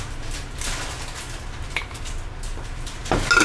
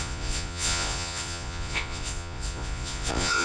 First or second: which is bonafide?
first